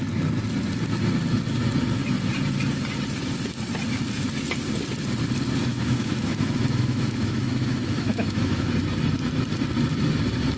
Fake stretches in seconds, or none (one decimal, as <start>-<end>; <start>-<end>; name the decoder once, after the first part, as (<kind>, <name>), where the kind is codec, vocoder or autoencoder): 5.7-8.7 (autoencoder, DAC-VAE)